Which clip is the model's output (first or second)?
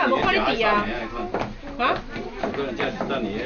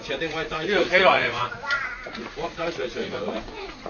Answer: second